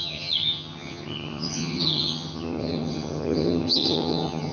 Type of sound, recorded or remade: remade